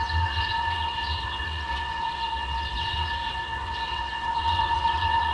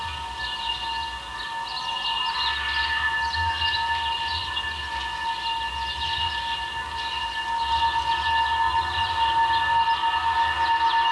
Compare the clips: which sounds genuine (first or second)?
second